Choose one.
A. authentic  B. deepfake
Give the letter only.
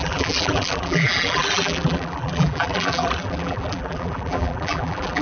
B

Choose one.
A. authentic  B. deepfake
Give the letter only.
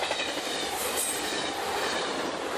B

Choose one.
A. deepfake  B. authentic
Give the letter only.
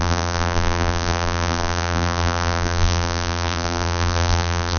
A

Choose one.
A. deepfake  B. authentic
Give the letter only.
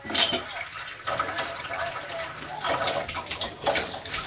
B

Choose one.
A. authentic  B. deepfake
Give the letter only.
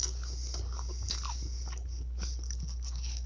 A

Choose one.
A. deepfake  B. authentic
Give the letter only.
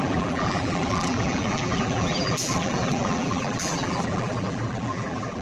A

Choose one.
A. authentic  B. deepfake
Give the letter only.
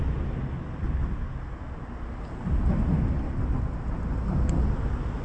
A